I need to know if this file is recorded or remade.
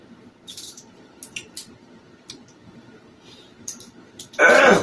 remade